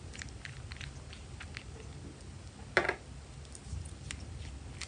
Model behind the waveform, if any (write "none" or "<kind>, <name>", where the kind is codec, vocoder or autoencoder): none